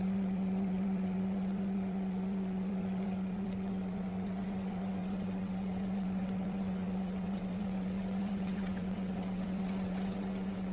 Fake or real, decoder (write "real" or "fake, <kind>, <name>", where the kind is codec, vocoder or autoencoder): fake, vocoder, WaveNeXt